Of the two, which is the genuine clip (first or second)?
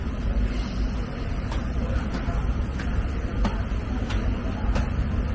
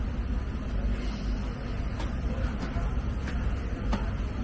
second